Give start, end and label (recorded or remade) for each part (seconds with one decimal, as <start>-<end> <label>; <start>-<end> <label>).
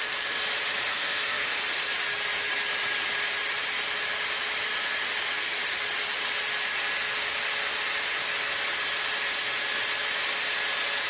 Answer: 0.0-0.9 recorded; 0.9-1.6 remade; 1.6-11.1 recorded